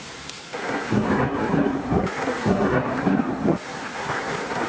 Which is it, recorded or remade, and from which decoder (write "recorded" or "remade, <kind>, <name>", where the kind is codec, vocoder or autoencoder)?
remade, codec, SNAC